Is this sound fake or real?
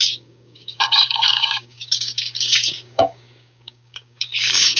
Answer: fake